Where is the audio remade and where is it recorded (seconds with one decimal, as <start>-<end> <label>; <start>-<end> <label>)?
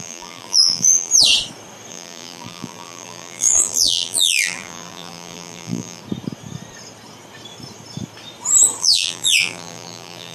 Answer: 0.0-1.1 remade; 1.1-1.9 recorded; 1.9-6.0 remade; 6.0-8.8 recorded; 8.8-10.3 remade